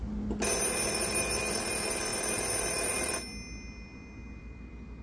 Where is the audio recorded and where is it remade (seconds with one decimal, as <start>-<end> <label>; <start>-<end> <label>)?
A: 0.0-5.0 recorded